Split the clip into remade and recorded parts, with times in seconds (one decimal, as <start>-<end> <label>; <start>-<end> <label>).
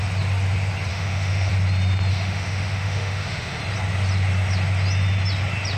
0.0-0.9 recorded; 0.9-1.5 remade; 1.5-2.1 recorded; 2.1-3.6 remade; 3.6-5.8 recorded